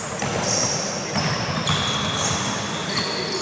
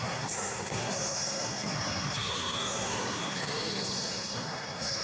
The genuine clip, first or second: first